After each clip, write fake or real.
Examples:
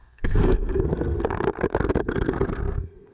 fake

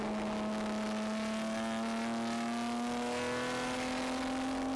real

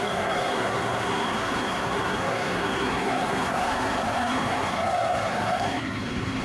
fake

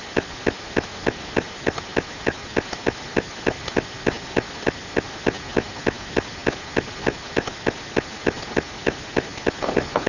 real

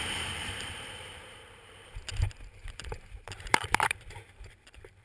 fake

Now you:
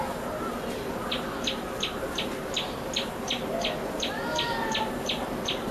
real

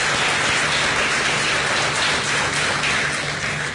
real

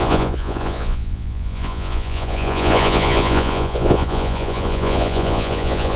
fake